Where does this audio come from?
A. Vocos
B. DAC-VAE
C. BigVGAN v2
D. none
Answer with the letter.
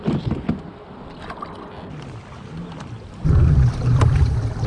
D